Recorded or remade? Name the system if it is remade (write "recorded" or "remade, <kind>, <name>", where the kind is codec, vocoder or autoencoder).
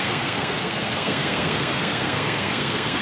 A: remade, codec, SNAC